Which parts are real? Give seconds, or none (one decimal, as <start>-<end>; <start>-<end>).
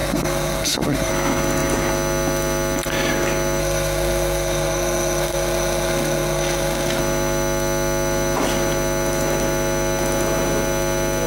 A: 1.1-3.6; 7.0-11.3